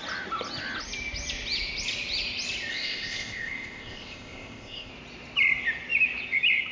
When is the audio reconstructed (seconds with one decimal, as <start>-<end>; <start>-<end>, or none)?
2.7-4.9